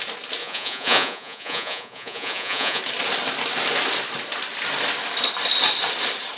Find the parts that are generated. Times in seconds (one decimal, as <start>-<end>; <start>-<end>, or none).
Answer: 0.4-2.8